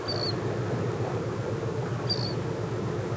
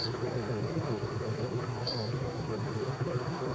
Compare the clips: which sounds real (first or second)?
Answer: first